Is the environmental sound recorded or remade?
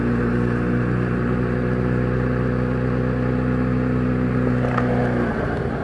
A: recorded